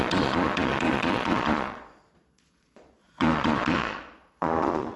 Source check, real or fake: fake